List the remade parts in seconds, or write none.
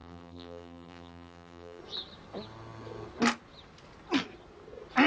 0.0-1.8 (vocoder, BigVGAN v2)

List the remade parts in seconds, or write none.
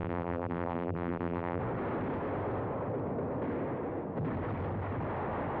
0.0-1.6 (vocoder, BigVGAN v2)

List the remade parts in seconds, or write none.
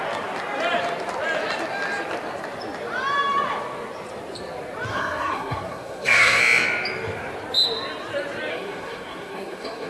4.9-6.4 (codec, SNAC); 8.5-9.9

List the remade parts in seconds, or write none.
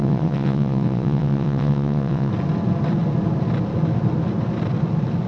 0.0-2.3 (vocoder, WaveNeXt)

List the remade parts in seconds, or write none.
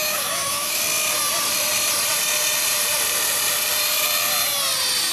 0.0-0.8 (autoencoder, DAC-VAE)